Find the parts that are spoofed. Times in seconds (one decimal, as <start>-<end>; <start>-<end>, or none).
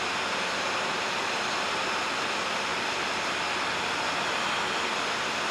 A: none